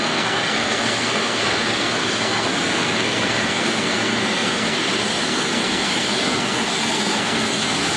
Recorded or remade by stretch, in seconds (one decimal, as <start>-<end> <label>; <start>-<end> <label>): 0.0-8.0 remade